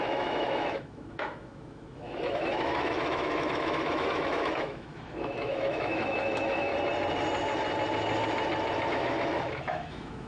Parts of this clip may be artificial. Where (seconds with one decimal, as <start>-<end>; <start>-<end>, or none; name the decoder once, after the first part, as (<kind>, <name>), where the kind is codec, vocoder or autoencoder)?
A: 0.0-6.7 (autoencoder, DAC-VAE); 8.9-10.3